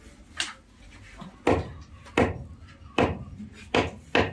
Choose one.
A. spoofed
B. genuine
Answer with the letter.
B